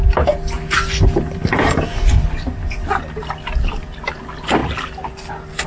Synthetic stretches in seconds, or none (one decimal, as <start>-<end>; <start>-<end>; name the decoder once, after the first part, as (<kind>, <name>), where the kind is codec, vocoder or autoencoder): none